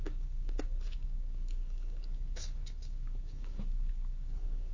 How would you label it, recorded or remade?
remade